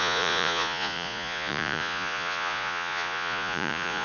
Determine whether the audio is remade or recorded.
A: remade